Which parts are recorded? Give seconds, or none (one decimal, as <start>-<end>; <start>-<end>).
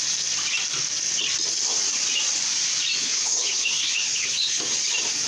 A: 0.0-3.0; 4.6-5.3